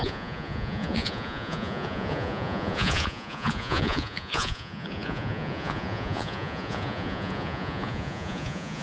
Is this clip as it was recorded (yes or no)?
no